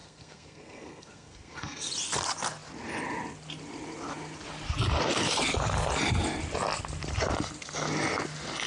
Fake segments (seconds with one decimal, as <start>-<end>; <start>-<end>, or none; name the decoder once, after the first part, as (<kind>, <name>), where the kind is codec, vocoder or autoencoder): 0.0-1.9 (codec, SNAC)